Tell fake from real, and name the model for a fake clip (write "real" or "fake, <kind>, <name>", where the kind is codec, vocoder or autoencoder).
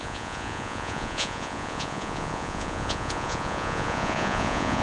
fake, vocoder, Vocos